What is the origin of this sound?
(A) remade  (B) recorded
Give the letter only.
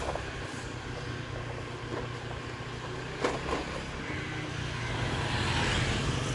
B